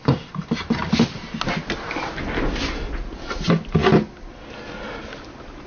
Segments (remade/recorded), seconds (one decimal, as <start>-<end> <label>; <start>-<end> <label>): 0.0-5.7 recorded